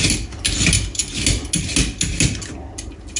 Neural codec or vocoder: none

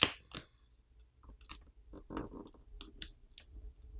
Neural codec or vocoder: none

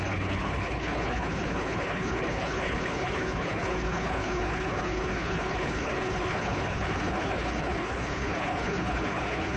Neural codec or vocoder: codec, HILCodec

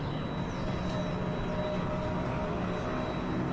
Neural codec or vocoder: none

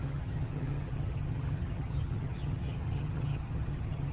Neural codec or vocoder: vocoder, HiFi-GAN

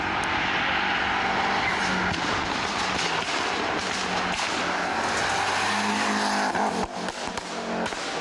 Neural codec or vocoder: none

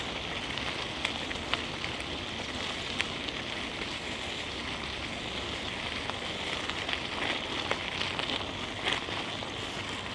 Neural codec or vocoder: none